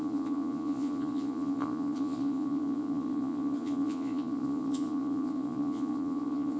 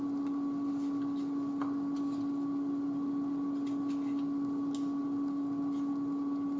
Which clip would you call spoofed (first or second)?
first